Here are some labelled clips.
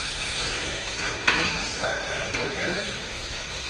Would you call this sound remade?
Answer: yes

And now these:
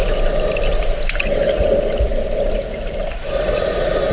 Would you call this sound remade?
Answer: no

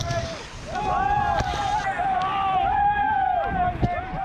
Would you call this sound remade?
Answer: no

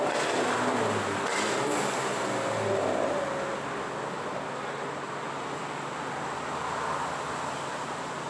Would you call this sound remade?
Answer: no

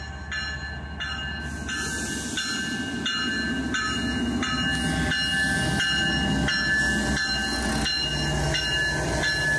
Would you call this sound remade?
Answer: no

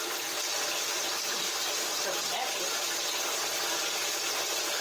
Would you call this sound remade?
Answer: no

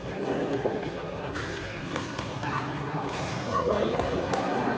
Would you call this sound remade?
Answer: yes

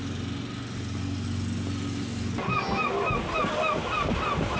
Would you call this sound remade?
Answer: no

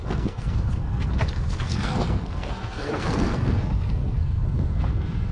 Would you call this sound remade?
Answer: yes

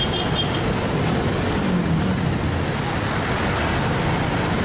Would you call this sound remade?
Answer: no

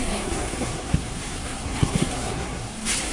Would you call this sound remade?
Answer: yes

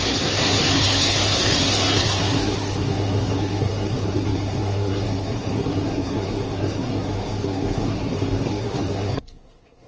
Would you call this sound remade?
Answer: yes